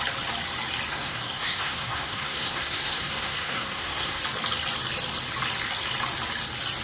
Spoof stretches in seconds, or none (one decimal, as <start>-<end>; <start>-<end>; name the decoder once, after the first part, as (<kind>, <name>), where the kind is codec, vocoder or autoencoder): 0.9-4.2 (codec, SNAC)